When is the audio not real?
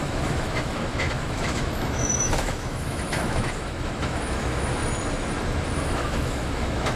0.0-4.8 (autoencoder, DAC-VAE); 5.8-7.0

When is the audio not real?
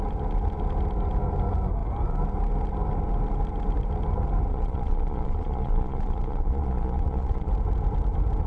4.5-7.5 (vocoder, Vocos)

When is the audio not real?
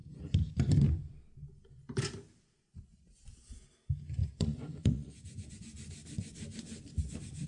4.2-5.9 (vocoder, Vocos)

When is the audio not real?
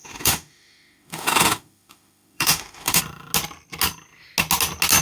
0.0-3.0 (autoencoder, DAC-VAE)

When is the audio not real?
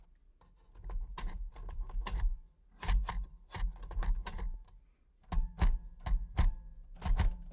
1.1-4.7 (vocoder, BigVGAN v2)